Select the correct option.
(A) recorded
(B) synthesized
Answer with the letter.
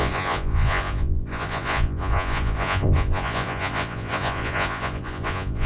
B